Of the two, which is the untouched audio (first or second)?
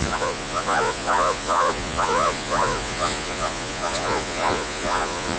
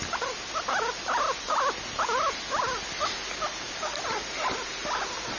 second